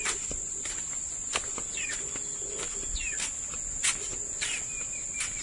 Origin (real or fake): real